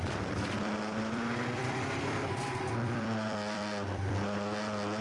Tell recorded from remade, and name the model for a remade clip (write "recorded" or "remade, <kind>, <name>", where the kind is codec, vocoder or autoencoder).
remade, vocoder, BigVGAN v2